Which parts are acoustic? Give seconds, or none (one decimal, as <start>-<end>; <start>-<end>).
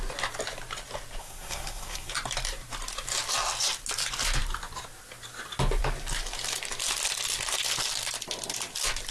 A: 0.0-1.2; 2.1-9.1